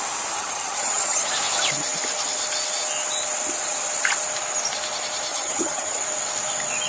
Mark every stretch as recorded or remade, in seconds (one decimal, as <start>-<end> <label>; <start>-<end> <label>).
0.0-0.4 recorded; 0.4-1.3 remade; 1.3-5.3 recorded; 5.3-6.0 remade; 6.0-6.9 recorded